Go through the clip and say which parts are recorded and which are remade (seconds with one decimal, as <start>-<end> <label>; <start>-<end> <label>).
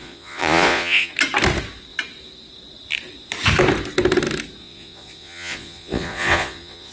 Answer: 0.0-1.1 remade; 1.1-4.6 recorded; 4.6-6.9 remade